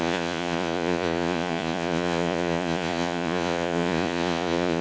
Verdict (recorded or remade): remade